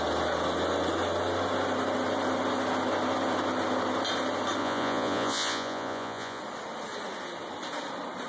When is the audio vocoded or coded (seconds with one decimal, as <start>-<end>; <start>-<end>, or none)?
4.6-6.4